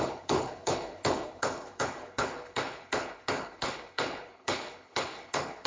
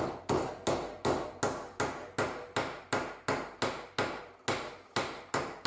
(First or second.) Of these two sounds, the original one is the second